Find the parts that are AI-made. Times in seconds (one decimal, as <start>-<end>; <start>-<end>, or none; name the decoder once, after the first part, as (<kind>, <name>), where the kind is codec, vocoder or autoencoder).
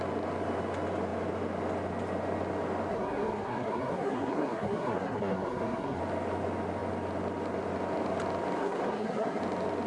2.9-6.0 (codec, SNAC); 8.6-9.4